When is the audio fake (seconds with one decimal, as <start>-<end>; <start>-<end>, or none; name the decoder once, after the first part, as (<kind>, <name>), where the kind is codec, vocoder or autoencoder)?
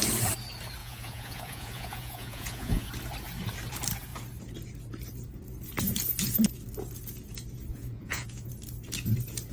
0.8-2.9 (vocoder, Vocos); 7.7-8.5